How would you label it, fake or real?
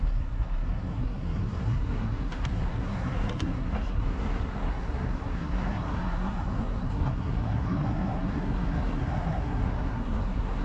fake